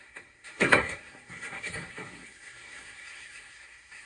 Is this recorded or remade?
remade